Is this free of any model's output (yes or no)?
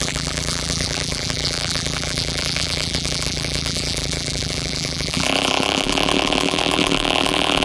no